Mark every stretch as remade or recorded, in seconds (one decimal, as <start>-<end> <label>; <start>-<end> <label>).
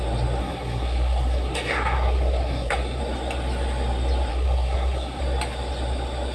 0.0-0.4 recorded; 0.4-3.0 remade; 3.0-4.3 recorded; 4.3-5.2 remade; 5.2-6.3 recorded